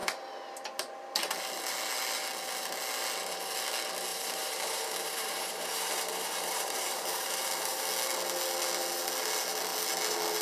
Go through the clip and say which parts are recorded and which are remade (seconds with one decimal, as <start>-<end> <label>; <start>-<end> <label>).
0.0-4.1 recorded; 4.1-7.8 remade; 7.8-10.4 recorded